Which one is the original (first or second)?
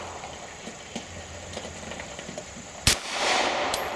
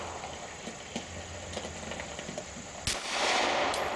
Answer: second